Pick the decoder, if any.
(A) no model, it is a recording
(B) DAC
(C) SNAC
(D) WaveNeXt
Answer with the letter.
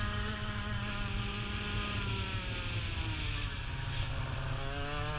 A